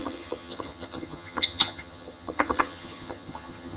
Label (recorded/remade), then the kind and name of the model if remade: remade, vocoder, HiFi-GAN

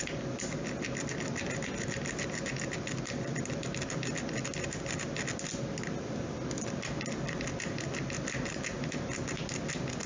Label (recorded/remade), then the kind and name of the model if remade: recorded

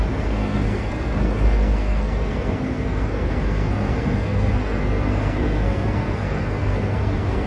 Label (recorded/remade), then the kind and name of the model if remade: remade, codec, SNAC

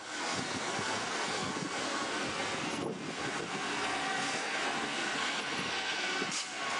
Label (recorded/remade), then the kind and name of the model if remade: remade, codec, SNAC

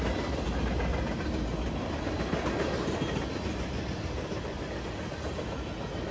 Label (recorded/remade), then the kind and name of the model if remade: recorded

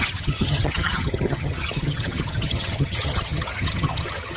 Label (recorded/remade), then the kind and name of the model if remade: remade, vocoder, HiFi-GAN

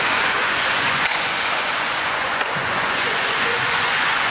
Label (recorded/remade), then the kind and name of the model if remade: remade, vocoder, Vocos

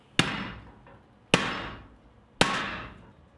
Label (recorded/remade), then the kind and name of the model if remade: recorded